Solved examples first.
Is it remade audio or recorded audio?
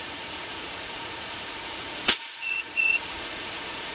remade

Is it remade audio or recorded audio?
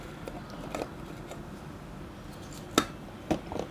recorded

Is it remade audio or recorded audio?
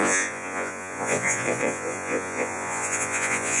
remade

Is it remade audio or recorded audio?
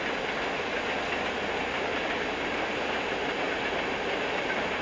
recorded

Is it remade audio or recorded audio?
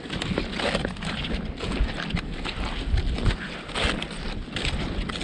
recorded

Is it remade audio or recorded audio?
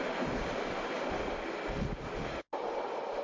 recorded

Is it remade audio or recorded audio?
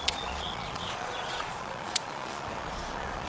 remade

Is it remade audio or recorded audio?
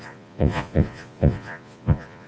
remade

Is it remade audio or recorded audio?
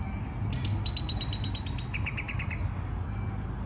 recorded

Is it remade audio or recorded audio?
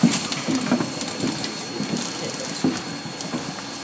recorded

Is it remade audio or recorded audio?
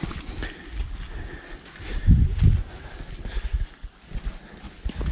recorded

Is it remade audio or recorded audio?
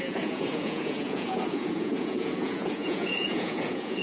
remade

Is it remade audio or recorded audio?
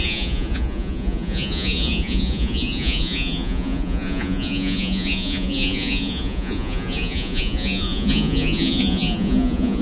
remade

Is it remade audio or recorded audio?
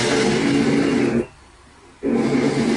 recorded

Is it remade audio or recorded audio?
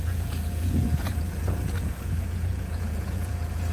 remade